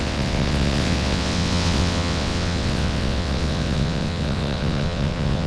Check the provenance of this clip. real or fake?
fake